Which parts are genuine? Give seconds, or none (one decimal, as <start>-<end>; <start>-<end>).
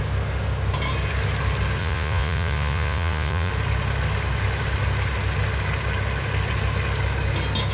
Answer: 0.0-1.8; 3.5-7.7